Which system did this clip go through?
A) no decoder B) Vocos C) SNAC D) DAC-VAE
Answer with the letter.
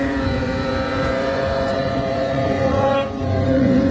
B